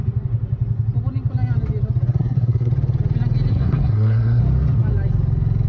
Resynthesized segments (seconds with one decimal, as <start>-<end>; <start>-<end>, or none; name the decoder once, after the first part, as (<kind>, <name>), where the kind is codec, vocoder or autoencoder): 2.1-2.7 (codec, SNAC); 3.5-4.4